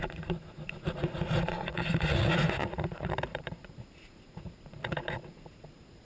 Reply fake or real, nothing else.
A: fake